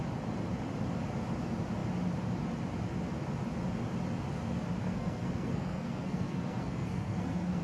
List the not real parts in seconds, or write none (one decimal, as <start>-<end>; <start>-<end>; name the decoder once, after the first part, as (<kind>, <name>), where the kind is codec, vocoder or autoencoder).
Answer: 4.8-7.6 (codec, SNAC)